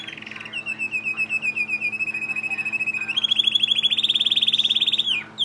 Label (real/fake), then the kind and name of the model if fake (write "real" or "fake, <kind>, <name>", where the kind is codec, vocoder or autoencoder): real